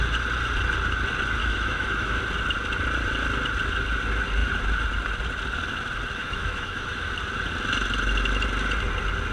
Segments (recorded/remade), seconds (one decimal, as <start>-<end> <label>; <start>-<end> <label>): 0.0-1.4 recorded; 1.4-2.2 remade; 2.2-6.2 recorded; 6.2-7.1 remade; 7.1-9.3 recorded